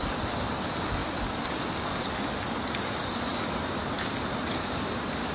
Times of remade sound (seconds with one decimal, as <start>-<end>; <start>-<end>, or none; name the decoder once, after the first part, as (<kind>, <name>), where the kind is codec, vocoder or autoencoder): none